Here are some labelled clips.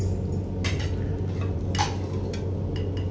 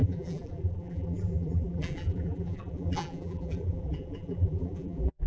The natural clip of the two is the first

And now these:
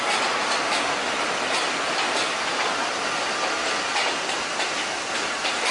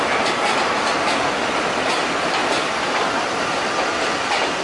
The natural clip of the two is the first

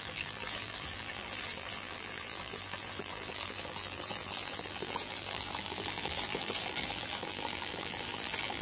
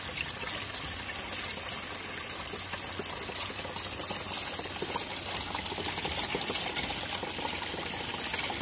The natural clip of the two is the second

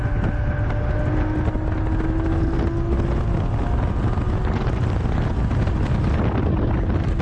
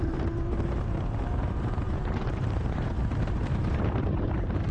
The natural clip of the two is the first